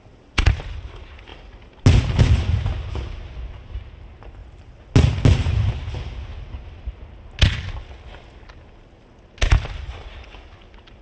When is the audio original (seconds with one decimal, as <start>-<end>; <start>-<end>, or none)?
0.0-11.0